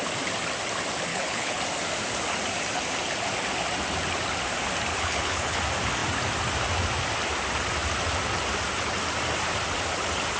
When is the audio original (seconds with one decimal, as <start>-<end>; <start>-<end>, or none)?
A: 0.0-1.1; 1.6-4.9; 5.6-10.4